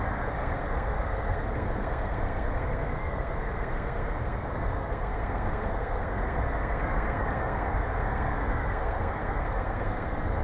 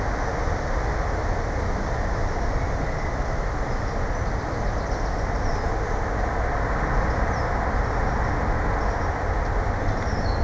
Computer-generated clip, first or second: first